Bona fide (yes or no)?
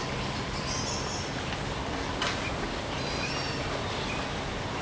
yes